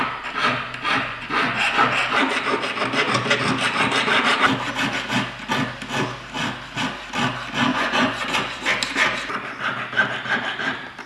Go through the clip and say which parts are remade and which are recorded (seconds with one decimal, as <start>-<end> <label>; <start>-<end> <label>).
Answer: 0.0-1.0 recorded; 1.0-1.8 remade; 1.8-7.7 recorded; 7.7-8.6 remade; 8.6-11.1 recorded